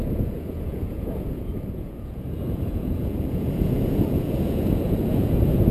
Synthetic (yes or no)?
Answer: yes